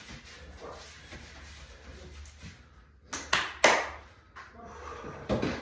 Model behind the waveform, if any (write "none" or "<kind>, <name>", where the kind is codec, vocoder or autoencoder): none